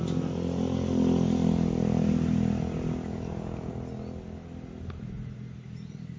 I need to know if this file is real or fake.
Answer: real